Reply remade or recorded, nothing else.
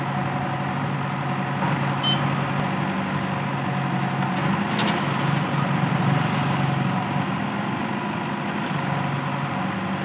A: recorded